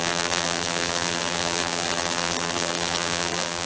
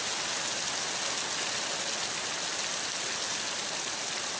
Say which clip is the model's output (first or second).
first